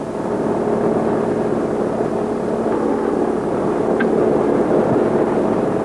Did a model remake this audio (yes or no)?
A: no